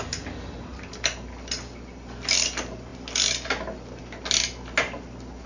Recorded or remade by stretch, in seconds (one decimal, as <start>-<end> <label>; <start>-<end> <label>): 0.0-5.5 recorded

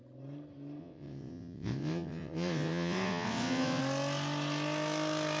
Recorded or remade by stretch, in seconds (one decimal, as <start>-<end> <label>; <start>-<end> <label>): 0.0-0.8 recorded; 0.8-3.8 remade; 3.8-5.4 recorded

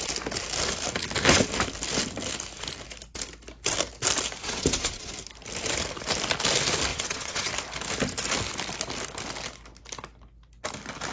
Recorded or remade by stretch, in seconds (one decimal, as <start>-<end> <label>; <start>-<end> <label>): 0.0-4.4 recorded; 4.4-5.1 remade; 5.1-6.9 recorded; 6.9-7.5 remade; 7.5-11.1 recorded

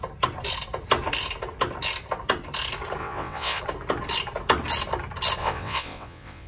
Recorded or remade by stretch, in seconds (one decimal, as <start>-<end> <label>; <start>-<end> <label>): 0.0-3.0 recorded; 3.0-3.6 remade; 3.6-5.4 recorded; 5.4-6.5 remade

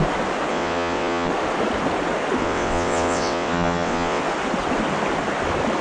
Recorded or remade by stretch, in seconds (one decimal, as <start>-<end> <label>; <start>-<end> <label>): 0.0-0.5 recorded; 0.5-1.3 remade; 1.3-2.4 recorded; 2.4-4.2 remade; 4.2-5.8 recorded

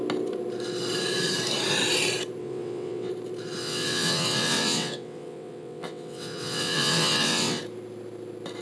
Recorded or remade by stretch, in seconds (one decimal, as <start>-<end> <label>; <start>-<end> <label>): 0.0-2.4 recorded; 2.4-3.1 remade; 3.1-3.6 recorded; 3.6-7.6 remade; 7.6-8.6 recorded

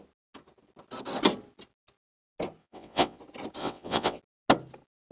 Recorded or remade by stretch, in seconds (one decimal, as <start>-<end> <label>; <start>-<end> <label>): 0.0-2.6 recorded; 2.6-3.2 remade; 3.2-3.6 recorded; 3.6-4.2 remade; 4.2-5.1 recorded